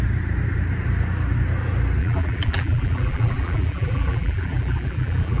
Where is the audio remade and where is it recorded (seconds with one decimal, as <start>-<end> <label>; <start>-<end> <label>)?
0.0-2.0 recorded; 2.0-5.4 remade